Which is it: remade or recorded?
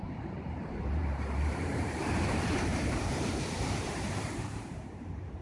remade